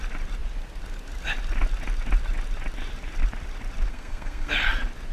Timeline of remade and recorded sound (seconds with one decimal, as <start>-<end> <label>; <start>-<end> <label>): 0.0-3.9 recorded; 3.9-4.5 remade; 4.5-5.1 recorded